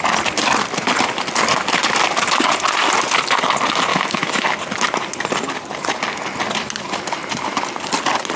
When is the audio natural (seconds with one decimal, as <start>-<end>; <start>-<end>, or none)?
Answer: 0.0-3.9; 4.5-8.4